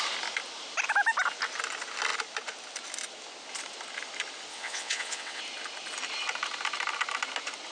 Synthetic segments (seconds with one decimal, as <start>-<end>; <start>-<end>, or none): 4.5-5.4